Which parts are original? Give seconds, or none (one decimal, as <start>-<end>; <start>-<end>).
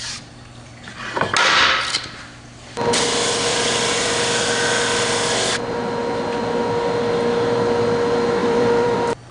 0.0-3.5; 4.1-8.4